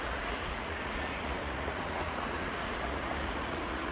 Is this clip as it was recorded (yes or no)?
no